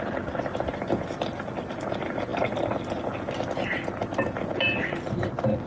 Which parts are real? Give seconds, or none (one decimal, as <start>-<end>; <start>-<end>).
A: 0.0-5.7